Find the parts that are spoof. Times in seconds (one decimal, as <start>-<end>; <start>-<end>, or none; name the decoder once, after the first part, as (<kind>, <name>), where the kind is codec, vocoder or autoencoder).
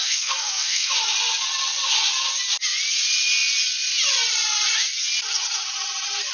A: 0.0-0.9 (codec, SNAC)